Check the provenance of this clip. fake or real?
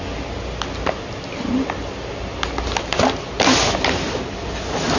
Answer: real